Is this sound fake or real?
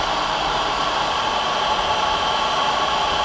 real